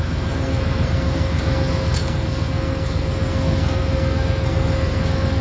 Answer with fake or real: fake